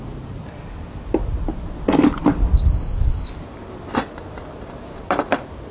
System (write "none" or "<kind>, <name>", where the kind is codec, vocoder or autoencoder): none